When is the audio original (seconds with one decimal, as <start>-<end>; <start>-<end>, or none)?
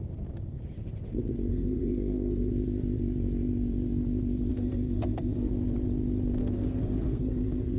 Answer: 0.0-1.5; 2.5-4.5; 5.5-6.4